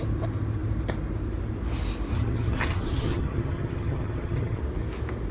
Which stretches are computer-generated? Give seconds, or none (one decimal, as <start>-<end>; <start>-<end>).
2.1-4.6